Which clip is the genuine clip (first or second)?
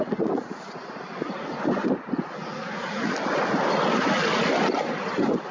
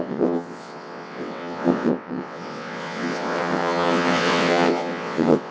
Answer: first